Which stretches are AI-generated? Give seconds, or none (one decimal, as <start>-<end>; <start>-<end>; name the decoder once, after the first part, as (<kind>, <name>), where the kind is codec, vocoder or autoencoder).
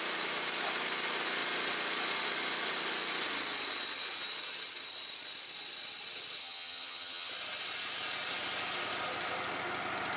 6.4-7.3 (vocoder, HiFi-GAN)